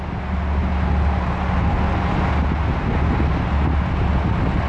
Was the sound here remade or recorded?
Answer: recorded